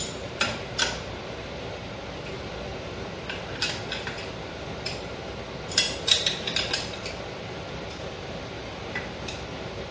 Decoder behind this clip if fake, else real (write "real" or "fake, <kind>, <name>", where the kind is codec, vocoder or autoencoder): fake, vocoder, BigVGAN v2